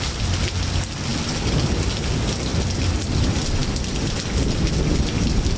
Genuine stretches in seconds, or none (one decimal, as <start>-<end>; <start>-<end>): 0.0-5.6